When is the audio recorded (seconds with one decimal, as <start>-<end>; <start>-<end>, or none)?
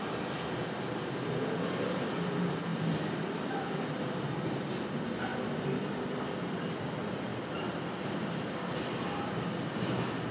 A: 0.0-2.7; 4.7-5.3